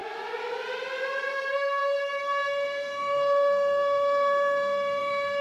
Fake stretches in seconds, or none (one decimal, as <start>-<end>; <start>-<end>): 1.3-5.4